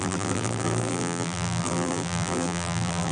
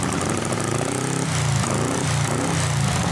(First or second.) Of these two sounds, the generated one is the first